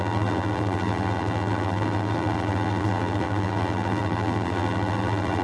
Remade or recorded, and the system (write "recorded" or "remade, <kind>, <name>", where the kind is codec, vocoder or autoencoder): remade, vocoder, BigVGAN v2